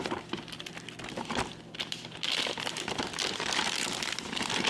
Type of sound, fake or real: real